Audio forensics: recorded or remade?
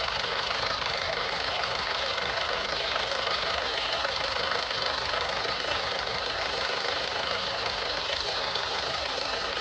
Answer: remade